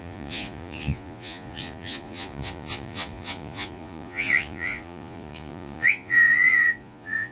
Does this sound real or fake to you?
fake